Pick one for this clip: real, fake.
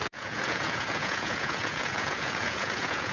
fake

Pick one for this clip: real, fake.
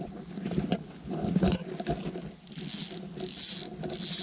real